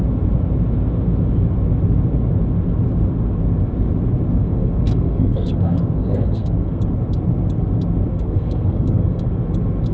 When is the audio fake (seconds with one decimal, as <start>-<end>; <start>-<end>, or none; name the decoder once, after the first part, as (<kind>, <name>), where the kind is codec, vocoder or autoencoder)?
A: 4.4-6.8 (codec, SNAC); 8.1-9.3